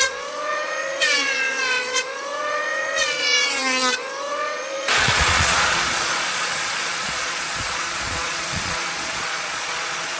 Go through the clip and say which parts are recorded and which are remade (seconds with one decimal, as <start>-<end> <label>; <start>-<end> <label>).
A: 0.0-10.2 remade